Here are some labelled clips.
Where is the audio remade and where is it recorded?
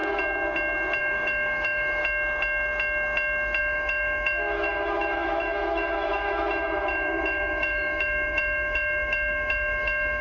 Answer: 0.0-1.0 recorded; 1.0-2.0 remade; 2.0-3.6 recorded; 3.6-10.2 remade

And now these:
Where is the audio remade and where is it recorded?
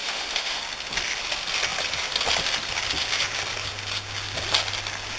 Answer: 0.0-0.6 remade; 0.6-5.2 recorded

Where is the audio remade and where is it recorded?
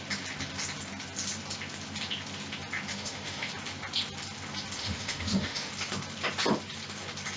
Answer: 0.0-2.9 recorded; 2.9-3.5 remade; 3.5-4.8 recorded; 4.8-5.7 remade; 5.7-7.4 recorded